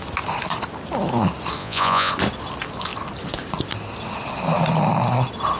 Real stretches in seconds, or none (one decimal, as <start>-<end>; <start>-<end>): 0.0-1.6; 2.1-5.6